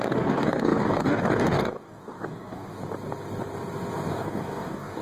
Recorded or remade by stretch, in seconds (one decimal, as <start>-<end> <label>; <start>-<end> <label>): 0.0-2.8 remade; 2.8-4.1 recorded; 4.1-5.0 remade